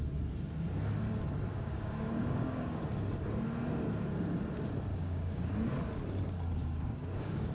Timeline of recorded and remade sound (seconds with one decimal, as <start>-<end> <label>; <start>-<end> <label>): 0.0-1.5 recorded; 1.5-2.8 remade; 2.8-4.9 recorded; 4.9-5.5 remade; 5.5-6.6 recorded; 6.6-7.5 remade